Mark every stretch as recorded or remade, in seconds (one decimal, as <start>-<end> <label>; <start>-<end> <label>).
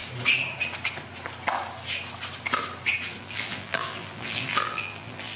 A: 0.0-3.2 recorded; 3.2-5.4 remade